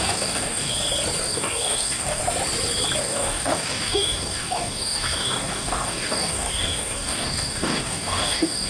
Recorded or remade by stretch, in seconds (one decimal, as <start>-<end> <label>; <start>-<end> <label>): 0.0-0.7 remade; 0.7-1.2 recorded; 1.2-2.2 remade; 2.2-3.0 recorded; 3.0-8.7 remade